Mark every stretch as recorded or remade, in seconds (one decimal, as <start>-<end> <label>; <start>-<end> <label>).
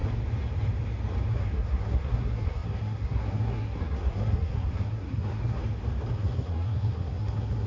0.0-1.3 recorded; 1.3-5.6 remade; 5.6-6.2 recorded; 6.2-7.7 remade